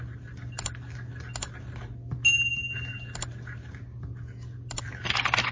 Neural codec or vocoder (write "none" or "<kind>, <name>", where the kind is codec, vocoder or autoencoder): none